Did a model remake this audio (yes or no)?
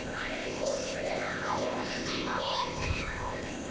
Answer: yes